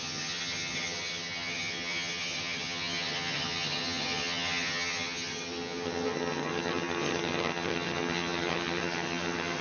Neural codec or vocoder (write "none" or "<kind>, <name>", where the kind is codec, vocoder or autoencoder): vocoder, HiFi-GAN